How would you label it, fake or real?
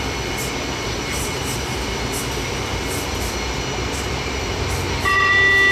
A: real